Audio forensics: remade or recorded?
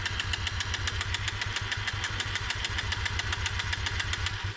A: recorded